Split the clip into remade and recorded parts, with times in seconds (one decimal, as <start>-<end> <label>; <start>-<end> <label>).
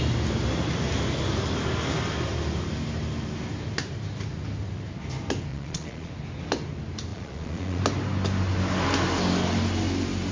0.0-5.5 recorded; 5.5-6.1 remade; 6.1-7.1 recorded; 7.1-7.8 remade; 7.8-10.3 recorded